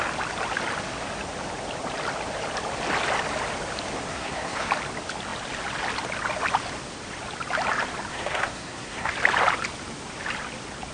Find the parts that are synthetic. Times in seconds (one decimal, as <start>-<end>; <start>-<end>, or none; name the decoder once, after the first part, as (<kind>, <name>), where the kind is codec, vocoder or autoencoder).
4.1-4.7 (codec, SNAC); 8.1-9.1